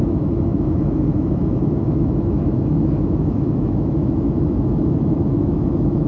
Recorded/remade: remade